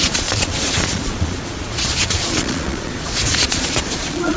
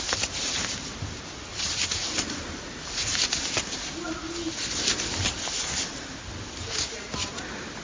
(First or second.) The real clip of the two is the second